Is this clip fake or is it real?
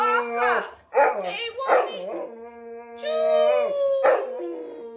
real